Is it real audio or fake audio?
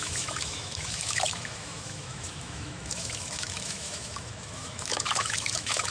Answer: fake